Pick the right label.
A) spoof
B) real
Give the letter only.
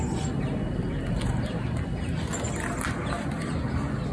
B